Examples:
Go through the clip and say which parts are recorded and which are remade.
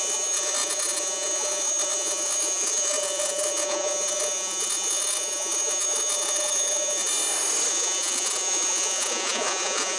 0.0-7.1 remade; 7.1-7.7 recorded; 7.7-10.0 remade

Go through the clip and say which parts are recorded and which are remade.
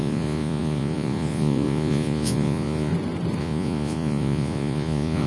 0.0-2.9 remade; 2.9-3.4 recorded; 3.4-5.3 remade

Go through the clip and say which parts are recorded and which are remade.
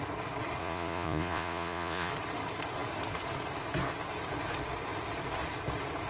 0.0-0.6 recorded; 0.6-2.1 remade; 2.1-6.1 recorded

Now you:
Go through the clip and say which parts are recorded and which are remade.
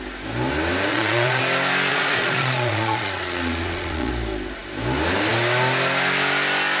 0.0-0.9 recorded; 0.9-1.4 remade; 1.4-1.9 recorded; 1.9-4.1 remade; 4.1-6.8 recorded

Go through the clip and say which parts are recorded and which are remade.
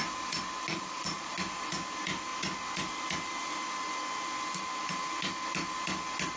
0.0-0.7 recorded; 0.7-1.3 remade; 1.3-6.4 recorded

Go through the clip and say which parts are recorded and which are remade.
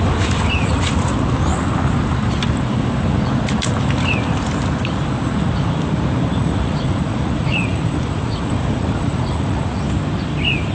0.0-0.6 recorded; 0.6-1.1 remade; 1.1-6.4 recorded; 6.4-9.8 remade; 9.8-10.7 recorded